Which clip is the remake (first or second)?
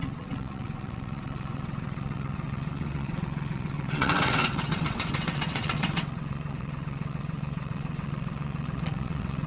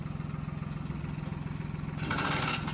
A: first